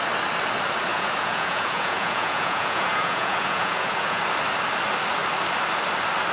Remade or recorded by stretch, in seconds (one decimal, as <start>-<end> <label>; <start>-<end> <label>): 0.0-0.9 recorded; 0.9-4.2 remade; 4.2-6.3 recorded